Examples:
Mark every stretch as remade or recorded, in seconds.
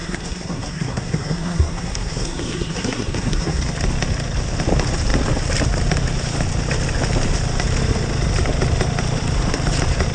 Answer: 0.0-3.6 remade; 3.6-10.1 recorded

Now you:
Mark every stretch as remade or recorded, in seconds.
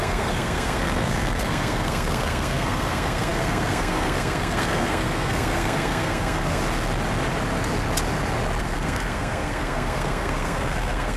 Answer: 0.0-6.6 remade; 6.6-8.6 recorded; 8.6-11.2 remade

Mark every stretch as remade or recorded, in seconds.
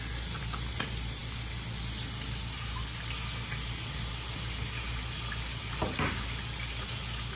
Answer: 0.0-7.4 recorded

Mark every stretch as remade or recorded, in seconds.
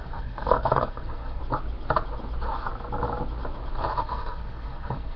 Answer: 0.0-1.4 remade; 1.4-4.0 recorded; 4.0-5.2 remade